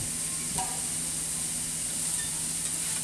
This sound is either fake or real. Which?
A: real